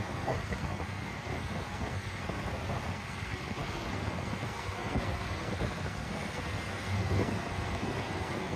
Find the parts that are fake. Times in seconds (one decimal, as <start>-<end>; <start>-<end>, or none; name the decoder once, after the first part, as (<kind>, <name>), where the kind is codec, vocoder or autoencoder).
0.0-8.6 (codec, SNAC)